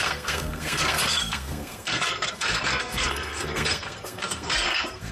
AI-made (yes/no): yes